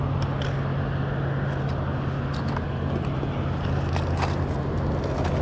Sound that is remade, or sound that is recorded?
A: recorded